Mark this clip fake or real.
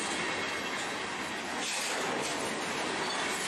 real